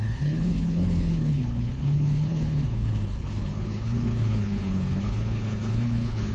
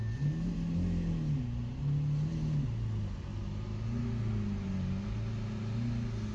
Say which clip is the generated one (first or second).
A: first